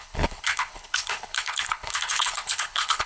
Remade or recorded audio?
remade